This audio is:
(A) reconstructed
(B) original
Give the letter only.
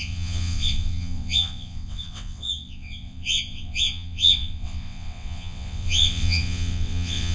A